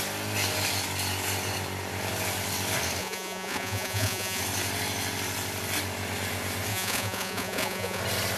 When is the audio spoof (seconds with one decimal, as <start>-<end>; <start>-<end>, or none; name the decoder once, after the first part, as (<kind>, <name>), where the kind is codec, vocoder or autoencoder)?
3.0-4.4 (vocoder, Vocos); 6.7-8.0